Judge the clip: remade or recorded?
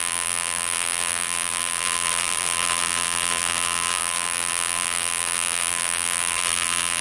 remade